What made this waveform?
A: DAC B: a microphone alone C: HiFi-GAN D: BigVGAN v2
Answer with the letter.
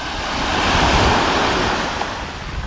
B